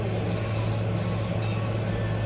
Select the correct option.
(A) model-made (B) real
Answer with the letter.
B